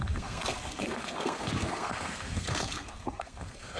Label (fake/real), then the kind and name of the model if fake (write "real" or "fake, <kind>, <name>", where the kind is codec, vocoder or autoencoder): fake, codec, SNAC